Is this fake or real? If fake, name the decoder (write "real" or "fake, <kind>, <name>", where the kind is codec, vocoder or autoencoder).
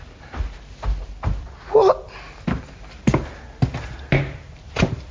real